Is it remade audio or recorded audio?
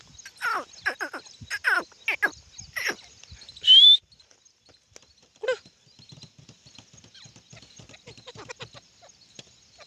recorded